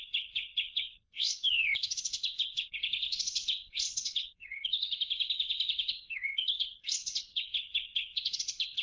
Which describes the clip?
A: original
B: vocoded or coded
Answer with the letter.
B